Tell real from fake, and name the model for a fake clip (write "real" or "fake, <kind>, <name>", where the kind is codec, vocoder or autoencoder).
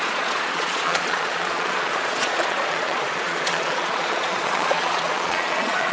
fake, vocoder, Vocos